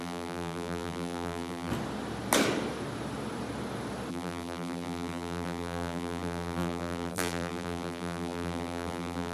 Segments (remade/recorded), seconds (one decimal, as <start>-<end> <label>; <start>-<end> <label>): 0.0-1.7 remade; 1.7-4.1 recorded; 4.1-9.3 remade